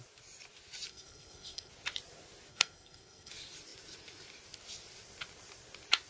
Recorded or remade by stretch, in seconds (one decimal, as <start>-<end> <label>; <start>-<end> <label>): 0.0-0.9 recorded; 0.9-1.7 remade; 1.7-2.5 recorded; 2.5-3.3 remade; 3.3-6.1 recorded